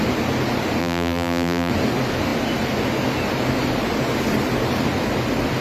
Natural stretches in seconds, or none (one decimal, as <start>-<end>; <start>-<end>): 0.0-0.8; 1.7-5.6